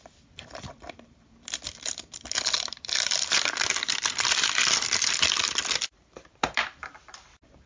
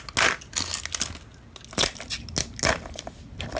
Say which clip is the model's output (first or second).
first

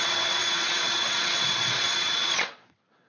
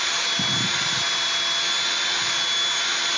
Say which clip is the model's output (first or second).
first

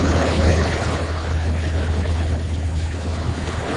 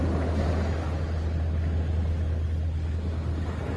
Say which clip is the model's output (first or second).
first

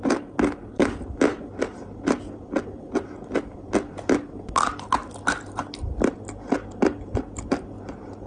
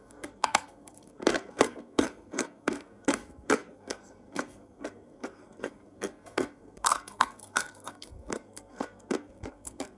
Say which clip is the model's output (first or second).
second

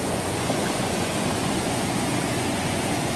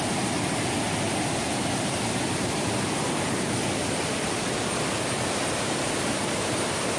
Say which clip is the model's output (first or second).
first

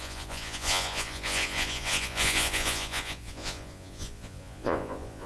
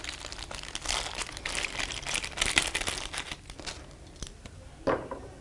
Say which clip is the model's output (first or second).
first